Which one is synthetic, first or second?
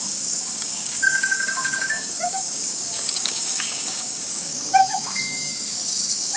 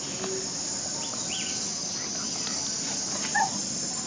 first